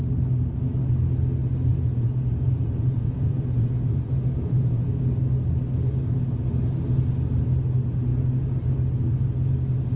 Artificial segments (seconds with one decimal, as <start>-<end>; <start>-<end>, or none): 1.7-4.9